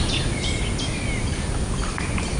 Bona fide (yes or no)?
yes